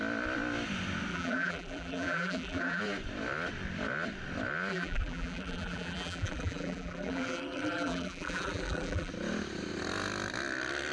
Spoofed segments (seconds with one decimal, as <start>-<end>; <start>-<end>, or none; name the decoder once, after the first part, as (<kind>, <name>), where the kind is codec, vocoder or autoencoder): 1.1-2.8 (vocoder, BigVGAN v2); 4.7-9.1